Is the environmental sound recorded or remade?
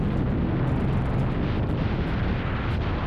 recorded